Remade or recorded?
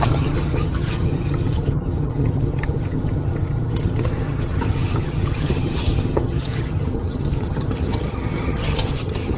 remade